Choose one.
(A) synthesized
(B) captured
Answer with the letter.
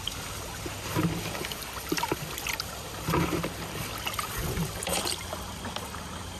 B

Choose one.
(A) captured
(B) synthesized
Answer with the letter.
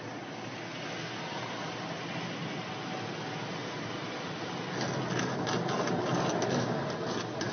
A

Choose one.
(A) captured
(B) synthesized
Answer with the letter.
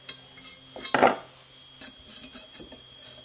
A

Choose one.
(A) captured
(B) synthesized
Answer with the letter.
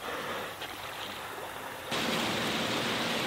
A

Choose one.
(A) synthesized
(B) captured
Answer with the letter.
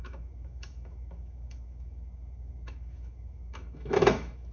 A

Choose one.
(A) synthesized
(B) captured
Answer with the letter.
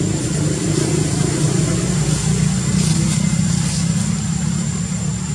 B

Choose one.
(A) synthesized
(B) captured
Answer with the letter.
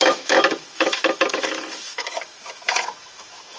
A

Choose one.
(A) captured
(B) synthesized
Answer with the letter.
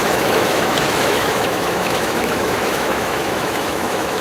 B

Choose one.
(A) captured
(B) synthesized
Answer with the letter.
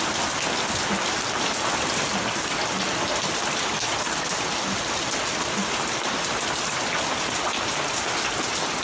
A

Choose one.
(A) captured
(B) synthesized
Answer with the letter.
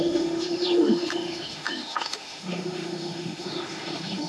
B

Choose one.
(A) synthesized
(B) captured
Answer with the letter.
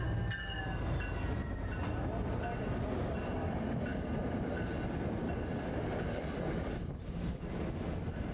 B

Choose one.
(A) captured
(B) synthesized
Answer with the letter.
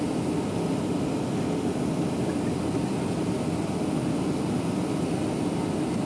A